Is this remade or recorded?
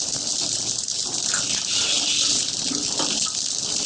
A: recorded